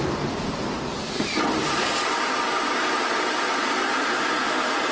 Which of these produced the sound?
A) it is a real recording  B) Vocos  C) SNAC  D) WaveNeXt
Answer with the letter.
A